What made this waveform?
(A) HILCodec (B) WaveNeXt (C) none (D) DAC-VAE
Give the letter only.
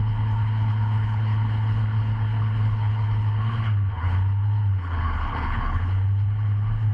A